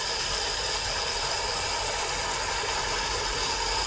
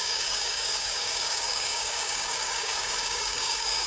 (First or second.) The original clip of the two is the first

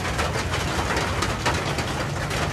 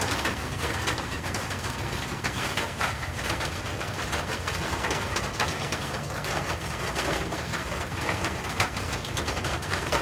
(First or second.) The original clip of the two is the first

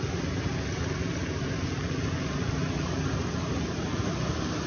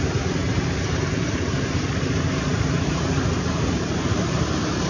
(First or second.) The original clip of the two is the first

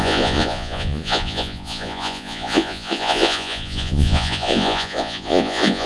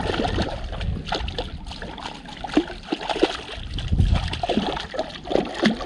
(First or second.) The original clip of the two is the second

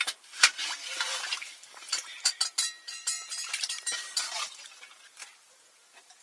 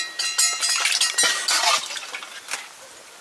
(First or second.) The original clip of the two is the second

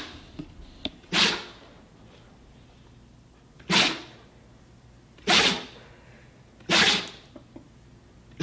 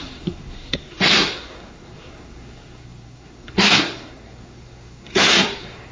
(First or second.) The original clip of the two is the first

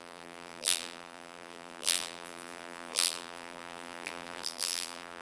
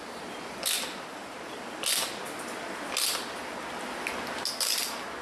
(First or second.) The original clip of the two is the second